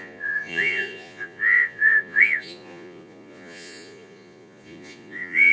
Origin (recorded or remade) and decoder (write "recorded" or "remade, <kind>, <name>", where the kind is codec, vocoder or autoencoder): remade, vocoder, Vocos